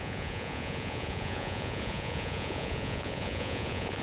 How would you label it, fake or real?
fake